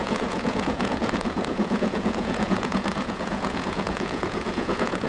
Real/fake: fake